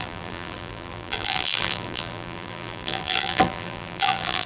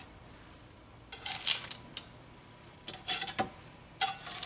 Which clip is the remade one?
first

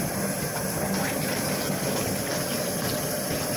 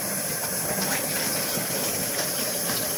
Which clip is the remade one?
second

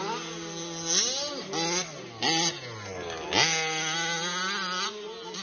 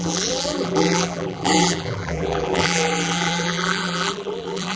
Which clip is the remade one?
second